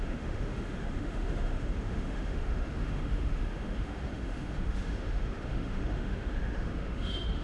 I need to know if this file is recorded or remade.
remade